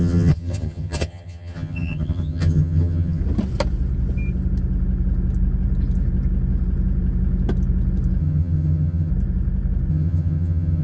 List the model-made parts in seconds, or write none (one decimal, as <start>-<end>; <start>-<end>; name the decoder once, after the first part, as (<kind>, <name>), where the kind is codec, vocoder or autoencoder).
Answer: 0.0-3.2 (vocoder, HiFi-GAN); 8.2-9.1; 9.9-10.8